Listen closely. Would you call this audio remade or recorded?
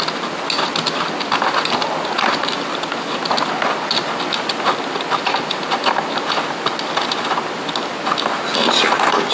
recorded